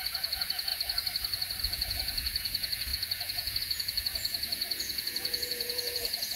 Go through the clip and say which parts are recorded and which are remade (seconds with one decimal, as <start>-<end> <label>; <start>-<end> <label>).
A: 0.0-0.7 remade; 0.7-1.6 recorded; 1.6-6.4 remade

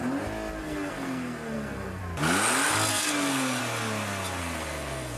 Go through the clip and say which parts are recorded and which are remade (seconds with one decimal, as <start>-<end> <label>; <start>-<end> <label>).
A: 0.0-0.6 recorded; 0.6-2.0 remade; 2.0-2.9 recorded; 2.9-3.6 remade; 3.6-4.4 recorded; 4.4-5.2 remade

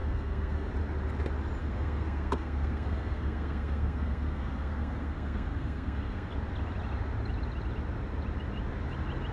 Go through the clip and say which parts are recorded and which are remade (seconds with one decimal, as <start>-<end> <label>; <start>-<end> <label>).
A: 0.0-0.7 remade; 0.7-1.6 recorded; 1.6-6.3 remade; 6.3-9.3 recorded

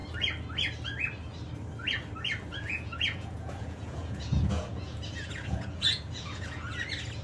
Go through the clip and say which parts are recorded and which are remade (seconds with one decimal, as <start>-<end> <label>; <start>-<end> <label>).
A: 0.0-2.5 recorded; 2.5-6.7 remade; 6.7-7.2 recorded

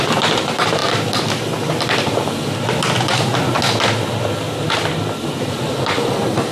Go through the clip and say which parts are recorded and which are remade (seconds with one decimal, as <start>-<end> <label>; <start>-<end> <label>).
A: 0.0-6.5 recorded